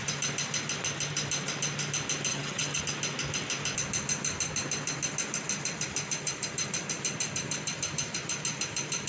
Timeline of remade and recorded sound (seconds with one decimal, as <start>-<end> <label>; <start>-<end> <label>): 0.0-2.3 recorded; 2.3-2.8 remade; 2.8-9.1 recorded